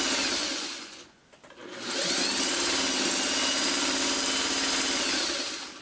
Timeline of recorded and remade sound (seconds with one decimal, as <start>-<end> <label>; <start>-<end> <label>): 0.0-0.4 recorded; 0.4-1.3 remade; 1.3-5.8 recorded